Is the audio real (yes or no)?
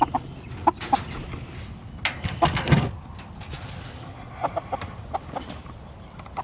yes